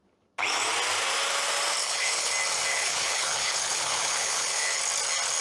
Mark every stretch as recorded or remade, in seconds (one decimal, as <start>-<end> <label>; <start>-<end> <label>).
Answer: 0.0-1.8 recorded; 1.8-2.3 remade; 2.3-2.7 recorded; 2.7-4.8 remade; 4.8-5.4 recorded